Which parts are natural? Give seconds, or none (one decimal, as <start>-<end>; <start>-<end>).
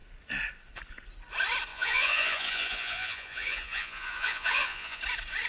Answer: 0.0-1.7; 5.0-5.5